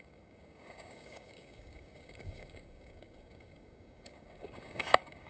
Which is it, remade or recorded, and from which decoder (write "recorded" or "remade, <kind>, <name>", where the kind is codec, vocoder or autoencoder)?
remade, codec, DAC